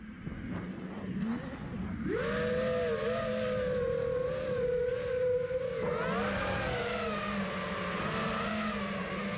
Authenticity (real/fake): real